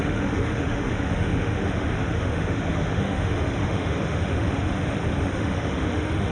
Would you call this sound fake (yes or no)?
yes